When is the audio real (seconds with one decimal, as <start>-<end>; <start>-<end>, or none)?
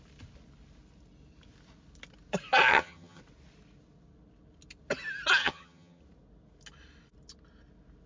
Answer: 0.0-2.7; 3.2-5.4; 6.0-8.1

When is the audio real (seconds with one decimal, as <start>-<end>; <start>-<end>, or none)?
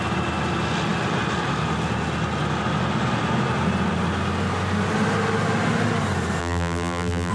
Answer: 0.0-6.4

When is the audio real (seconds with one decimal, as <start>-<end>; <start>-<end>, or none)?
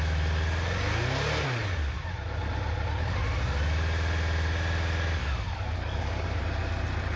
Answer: 0.0-5.2; 6.4-7.2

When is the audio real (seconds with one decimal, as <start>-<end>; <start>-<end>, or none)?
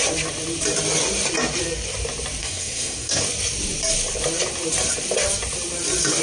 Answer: 0.0-2.4; 3.2-6.2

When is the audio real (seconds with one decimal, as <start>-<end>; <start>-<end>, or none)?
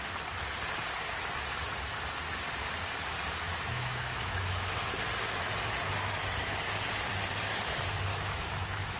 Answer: 0.0-3.5; 4.9-8.1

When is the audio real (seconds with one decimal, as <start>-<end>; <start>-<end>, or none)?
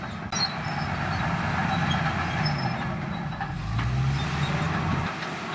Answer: 0.0-5.5